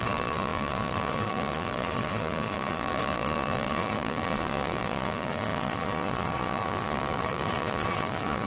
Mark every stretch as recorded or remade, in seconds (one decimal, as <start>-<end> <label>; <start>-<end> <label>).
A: 0.0-8.5 remade

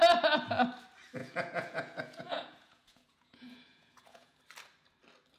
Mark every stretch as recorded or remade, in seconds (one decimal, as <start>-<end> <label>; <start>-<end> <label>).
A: 0.0-1.2 recorded; 1.2-4.4 remade; 4.4-5.4 recorded